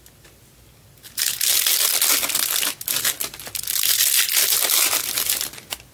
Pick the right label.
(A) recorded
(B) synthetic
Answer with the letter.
A